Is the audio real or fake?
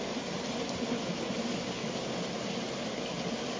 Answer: real